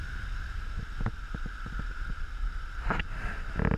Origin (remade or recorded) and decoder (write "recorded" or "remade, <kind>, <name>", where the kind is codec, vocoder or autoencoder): recorded